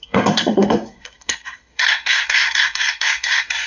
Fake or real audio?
fake